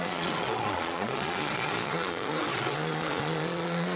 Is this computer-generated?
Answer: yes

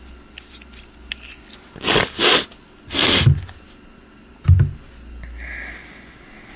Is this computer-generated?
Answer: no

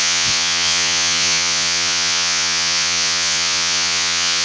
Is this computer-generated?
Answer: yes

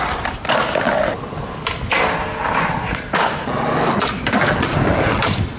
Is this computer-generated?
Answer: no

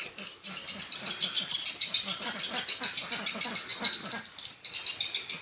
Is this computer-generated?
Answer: no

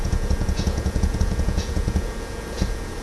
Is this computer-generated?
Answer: yes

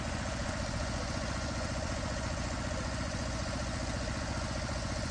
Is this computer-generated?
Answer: yes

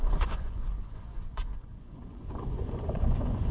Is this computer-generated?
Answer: yes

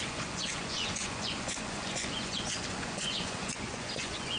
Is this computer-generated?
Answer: yes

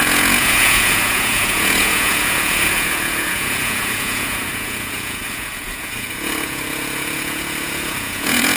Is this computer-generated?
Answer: yes